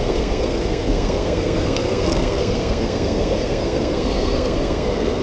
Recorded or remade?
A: remade